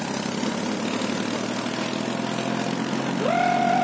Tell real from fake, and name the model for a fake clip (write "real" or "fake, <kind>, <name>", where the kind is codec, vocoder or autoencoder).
real